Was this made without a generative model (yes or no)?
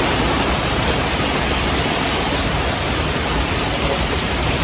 no